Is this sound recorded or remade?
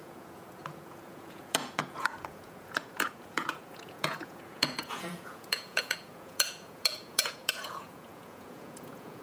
remade